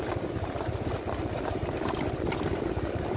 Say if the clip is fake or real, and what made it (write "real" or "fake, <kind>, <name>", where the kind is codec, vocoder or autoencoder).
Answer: real